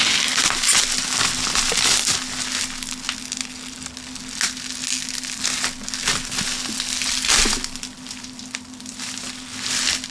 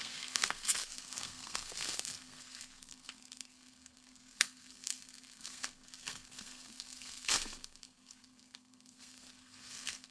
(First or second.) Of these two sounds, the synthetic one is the second